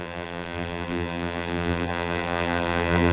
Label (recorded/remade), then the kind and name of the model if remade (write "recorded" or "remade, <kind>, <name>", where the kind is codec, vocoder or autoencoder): remade, vocoder, BigVGAN v2